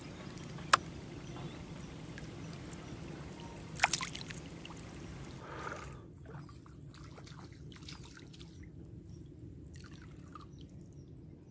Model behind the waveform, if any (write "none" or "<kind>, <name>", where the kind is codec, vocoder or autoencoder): none